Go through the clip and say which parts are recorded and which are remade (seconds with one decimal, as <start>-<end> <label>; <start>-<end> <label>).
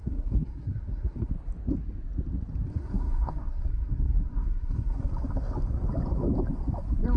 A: 0.0-1.3 remade; 1.3-2.7 recorded; 2.7-5.1 remade; 5.1-7.2 recorded